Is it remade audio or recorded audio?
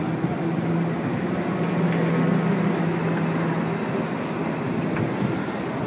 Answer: recorded